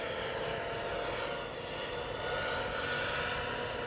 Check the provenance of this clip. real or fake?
real